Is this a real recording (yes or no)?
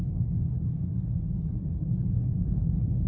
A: no